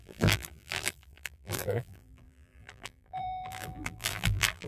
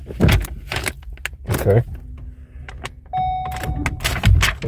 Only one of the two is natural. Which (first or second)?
second